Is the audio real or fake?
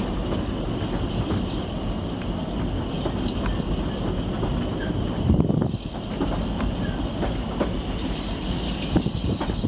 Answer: real